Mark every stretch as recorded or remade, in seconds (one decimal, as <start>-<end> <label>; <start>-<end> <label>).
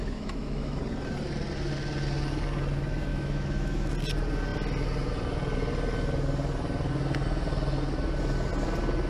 0.0-0.8 remade; 0.8-3.1 recorded; 3.1-3.9 remade; 3.9-9.1 recorded